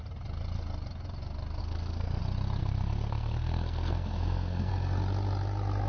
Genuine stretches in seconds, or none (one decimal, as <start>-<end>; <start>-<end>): 0.0-1.6; 2.2-2.6; 4.7-5.9